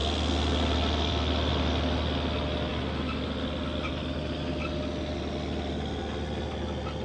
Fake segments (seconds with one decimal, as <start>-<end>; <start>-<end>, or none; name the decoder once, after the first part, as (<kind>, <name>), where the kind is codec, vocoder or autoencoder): none